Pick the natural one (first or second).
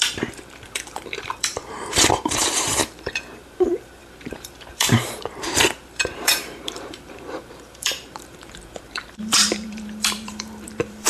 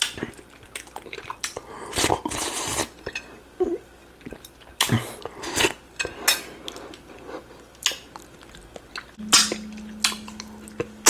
second